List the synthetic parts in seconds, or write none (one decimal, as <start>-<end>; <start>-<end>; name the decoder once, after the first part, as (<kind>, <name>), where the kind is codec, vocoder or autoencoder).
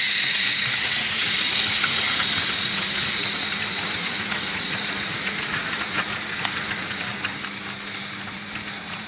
0.0-7.1 (vocoder, Vocos); 8.3-9.1